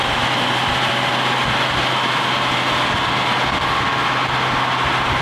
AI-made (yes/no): no